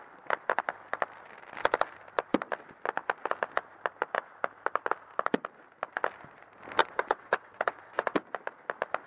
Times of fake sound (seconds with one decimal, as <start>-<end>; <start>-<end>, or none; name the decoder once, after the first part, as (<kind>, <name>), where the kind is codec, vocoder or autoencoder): 6.8-8.2 (vocoder, WaveNeXt)